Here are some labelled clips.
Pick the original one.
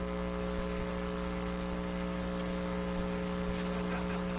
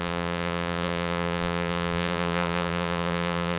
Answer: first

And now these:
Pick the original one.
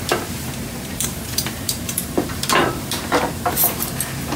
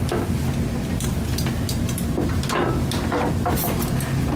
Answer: second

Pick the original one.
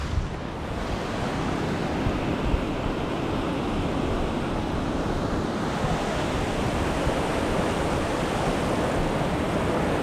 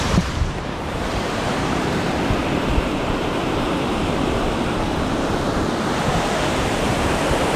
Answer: first